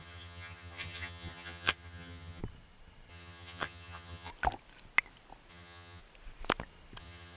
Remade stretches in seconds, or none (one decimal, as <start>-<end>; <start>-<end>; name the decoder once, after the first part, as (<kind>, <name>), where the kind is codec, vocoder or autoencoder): 0.0-2.4 (vocoder, HiFi-GAN); 3.1-4.3; 5.5-6.0; 7.0-7.4